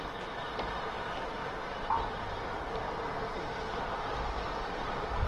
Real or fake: real